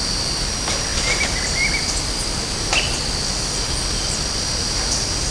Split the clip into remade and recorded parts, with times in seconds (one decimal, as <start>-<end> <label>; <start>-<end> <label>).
0.0-5.3 recorded